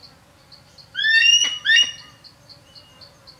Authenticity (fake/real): real